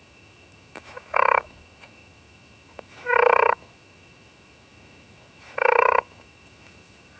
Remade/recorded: remade